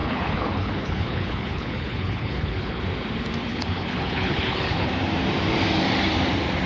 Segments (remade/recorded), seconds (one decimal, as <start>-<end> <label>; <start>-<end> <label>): 0.0-2.8 remade; 2.8-3.5 recorded; 3.5-4.9 remade; 4.9-6.7 recorded